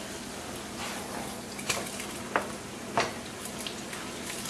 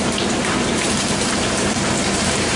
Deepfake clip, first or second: second